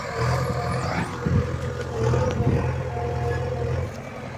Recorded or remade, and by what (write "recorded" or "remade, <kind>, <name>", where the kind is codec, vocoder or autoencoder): recorded